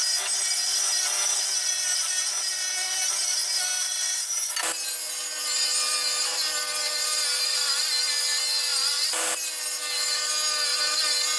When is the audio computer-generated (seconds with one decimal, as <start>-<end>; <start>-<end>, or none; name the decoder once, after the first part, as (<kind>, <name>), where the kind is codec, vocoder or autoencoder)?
none